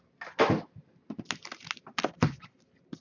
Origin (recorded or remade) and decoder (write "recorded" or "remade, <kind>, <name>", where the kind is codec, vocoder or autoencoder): recorded